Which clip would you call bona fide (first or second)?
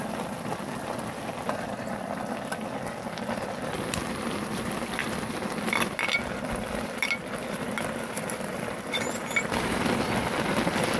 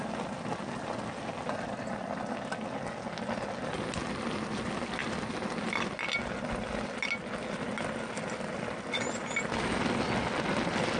second